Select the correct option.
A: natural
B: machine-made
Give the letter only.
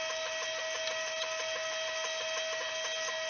A